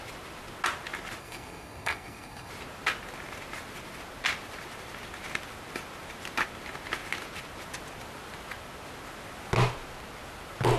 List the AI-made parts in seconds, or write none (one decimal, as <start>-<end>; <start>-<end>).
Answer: 1.2-2.5